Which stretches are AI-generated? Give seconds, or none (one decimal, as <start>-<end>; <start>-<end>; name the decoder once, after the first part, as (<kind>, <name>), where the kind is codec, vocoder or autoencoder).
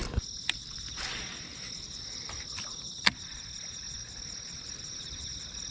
0.0-5.7 (vocoder, BigVGAN v2)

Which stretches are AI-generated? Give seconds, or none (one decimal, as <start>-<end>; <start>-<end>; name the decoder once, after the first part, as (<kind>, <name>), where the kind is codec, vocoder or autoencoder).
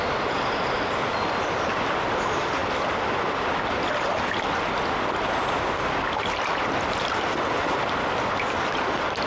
none